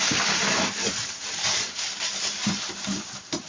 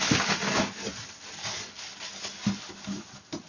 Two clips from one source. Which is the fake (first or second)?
first